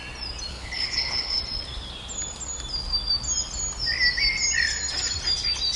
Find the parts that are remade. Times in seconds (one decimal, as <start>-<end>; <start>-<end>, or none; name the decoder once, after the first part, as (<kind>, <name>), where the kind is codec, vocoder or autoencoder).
0.5-1.4 (codec, HILCodec)

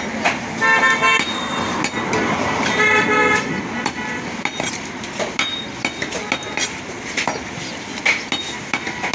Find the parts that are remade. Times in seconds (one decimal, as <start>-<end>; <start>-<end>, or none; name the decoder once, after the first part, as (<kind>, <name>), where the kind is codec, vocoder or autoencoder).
none

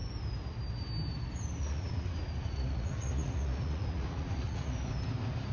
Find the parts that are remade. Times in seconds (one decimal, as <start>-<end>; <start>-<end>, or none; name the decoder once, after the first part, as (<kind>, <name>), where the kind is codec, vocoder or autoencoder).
1.6-4.9 (vocoder, Vocos)